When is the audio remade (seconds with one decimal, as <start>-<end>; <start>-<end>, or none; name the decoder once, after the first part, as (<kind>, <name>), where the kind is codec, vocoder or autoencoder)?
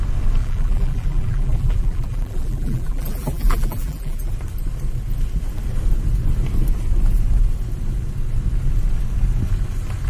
0.4-4.3 (vocoder, BigVGAN v2)